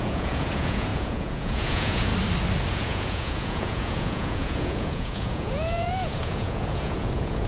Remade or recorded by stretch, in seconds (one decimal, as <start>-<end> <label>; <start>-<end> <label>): 0.0-2.1 remade; 2.1-2.7 recorded; 2.7-7.5 remade